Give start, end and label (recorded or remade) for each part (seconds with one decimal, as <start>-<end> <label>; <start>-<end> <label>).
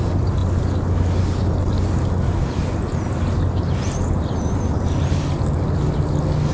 0.0-6.5 recorded